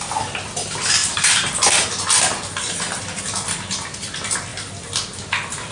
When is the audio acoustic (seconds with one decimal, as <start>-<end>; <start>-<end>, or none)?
0.0-1.0; 3.2-4.5; 5.2-5.7